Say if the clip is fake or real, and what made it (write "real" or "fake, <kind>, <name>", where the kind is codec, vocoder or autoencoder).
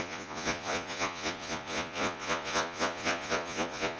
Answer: fake, vocoder, Vocos